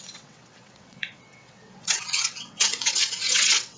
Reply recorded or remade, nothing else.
remade